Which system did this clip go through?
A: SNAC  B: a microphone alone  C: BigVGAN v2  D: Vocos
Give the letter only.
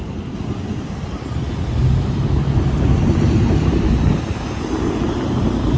B